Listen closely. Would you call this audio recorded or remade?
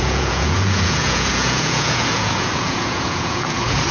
remade